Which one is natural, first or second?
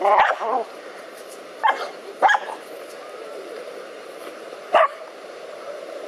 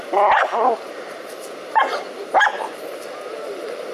second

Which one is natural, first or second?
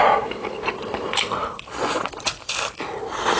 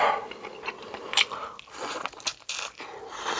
second